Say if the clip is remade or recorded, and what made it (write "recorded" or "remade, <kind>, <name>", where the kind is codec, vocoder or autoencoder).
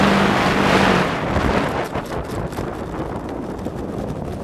recorded